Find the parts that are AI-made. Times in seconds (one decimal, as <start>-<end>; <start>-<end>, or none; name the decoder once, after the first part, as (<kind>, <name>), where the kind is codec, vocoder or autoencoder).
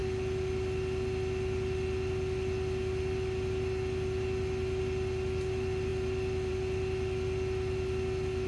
none